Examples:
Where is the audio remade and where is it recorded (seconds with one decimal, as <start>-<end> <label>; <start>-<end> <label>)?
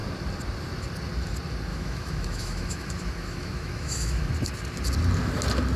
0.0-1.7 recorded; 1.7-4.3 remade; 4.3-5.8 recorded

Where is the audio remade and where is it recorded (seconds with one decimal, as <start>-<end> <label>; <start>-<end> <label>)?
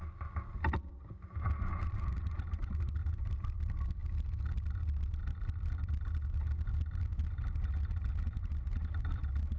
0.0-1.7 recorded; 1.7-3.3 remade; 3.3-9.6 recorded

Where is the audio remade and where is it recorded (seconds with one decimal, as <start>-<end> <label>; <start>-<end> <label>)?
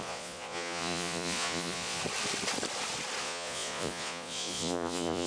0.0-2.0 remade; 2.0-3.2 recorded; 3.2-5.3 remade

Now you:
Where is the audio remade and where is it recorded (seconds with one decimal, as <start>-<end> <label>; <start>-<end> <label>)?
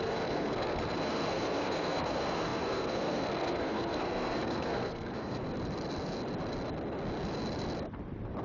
0.0-5.4 remade; 5.4-8.4 recorded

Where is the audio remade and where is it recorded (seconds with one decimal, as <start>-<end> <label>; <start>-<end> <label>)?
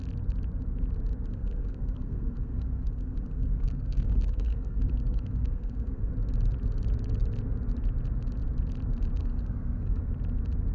0.0-1.3 recorded; 1.3-6.1 remade; 6.1-9.2 recorded; 9.2-10.0 remade; 10.0-10.7 recorded